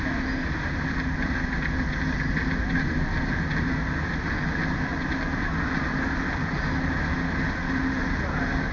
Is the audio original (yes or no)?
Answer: yes